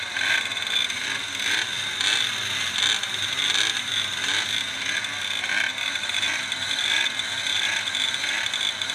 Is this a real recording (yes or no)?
yes